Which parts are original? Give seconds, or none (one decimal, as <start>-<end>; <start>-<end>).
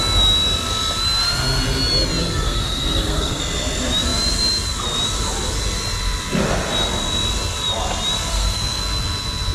0.0-2.2; 3.4-8.3; 8.8-9.5